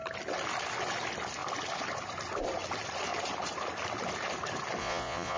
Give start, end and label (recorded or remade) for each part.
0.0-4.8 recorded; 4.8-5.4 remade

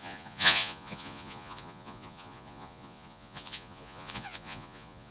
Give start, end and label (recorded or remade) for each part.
0.0-5.1 remade

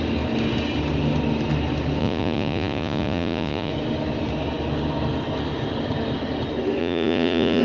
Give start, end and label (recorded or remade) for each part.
0.0-2.0 recorded; 2.0-3.7 remade; 3.7-6.8 recorded; 6.8-7.6 remade

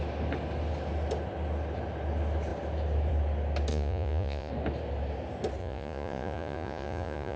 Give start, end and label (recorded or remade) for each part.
0.0-3.7 recorded; 3.7-4.5 remade; 4.5-5.6 recorded; 5.6-7.4 remade

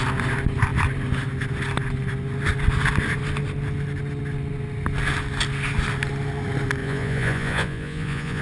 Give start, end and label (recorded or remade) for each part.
0.0-6.8 recorded; 6.8-8.4 remade

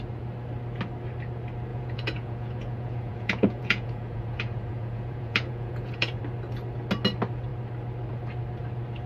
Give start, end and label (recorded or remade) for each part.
0.0-1.7 recorded; 1.7-6.2 remade; 6.2-9.1 recorded

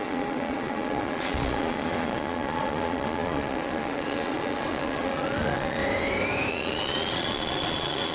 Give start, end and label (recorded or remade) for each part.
0.0-5.8 remade; 5.8-6.5 recorded; 6.5-8.1 remade